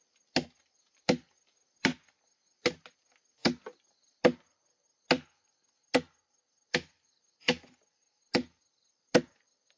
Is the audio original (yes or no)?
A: yes